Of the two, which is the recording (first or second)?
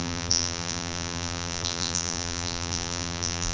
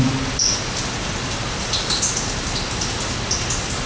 second